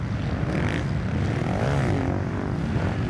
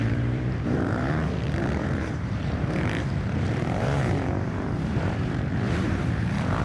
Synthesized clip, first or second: second